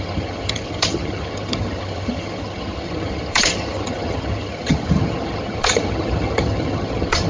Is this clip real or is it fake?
fake